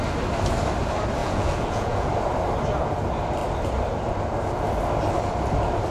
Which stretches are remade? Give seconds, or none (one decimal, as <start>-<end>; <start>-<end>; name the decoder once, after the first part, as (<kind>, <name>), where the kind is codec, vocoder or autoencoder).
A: 1.2-2.1 (vocoder, Vocos)